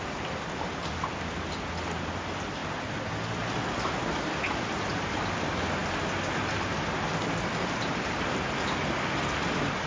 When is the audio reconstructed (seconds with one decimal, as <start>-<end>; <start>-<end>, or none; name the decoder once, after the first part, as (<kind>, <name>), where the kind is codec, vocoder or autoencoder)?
none